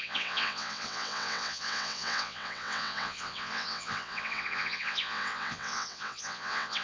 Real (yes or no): no